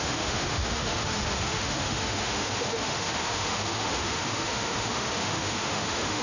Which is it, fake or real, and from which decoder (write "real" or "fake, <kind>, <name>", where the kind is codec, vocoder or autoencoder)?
fake, autoencoder, DAC-VAE